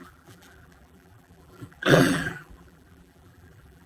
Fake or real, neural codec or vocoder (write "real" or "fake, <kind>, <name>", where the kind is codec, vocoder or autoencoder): fake, vocoder, BigVGAN v2